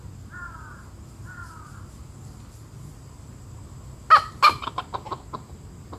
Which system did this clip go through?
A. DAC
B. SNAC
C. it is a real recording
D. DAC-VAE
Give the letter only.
C